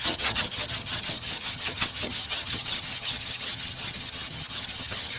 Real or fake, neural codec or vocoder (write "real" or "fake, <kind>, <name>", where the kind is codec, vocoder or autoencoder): fake, vocoder, HiFi-GAN